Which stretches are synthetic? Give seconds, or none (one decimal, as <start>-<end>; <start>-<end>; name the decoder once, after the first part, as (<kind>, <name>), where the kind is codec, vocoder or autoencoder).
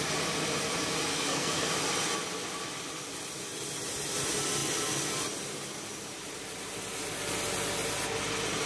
1.1-1.7 (codec, SNAC)